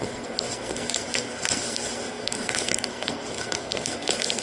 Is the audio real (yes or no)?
no